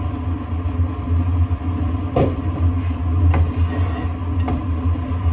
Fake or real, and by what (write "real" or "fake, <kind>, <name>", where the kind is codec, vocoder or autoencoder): real